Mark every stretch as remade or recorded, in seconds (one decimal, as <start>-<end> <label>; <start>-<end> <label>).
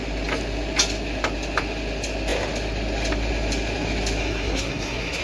0.0-4.2 recorded; 4.2-5.2 remade